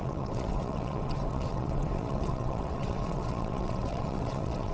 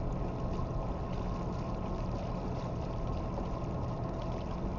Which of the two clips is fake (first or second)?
first